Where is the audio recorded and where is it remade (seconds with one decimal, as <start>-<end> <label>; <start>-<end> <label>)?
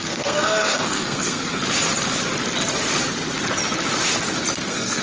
0.0-1.6 remade; 1.6-4.6 recorded; 4.6-5.0 remade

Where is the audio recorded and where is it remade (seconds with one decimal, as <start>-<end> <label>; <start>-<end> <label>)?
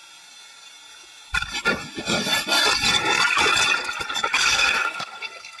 0.0-4.3 recorded; 4.3-5.6 remade